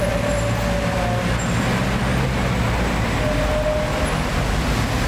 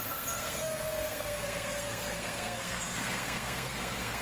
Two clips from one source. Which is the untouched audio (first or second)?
first